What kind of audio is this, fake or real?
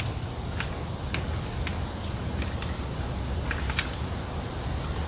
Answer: real